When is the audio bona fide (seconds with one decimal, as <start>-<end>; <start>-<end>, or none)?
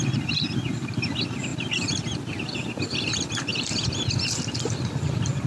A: 0.0-5.5